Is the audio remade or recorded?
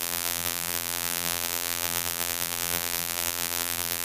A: remade